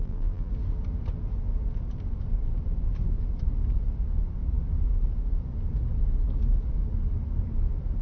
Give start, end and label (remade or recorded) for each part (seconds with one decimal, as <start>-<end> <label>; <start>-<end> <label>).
0.0-0.5 remade; 0.5-8.0 recorded